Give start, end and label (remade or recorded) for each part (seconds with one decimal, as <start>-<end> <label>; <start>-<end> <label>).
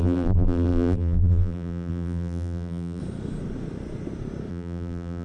0.0-3.0 remade; 3.0-4.5 recorded; 4.5-5.2 remade